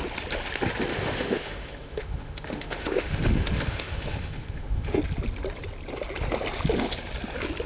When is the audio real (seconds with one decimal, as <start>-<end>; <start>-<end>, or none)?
0.0-0.9; 5.0-7.7